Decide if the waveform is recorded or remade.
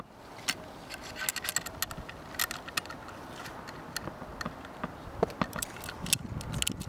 recorded